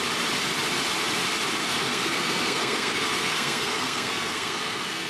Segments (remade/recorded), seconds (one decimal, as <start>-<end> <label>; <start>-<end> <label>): 0.0-1.6 recorded; 1.6-5.1 remade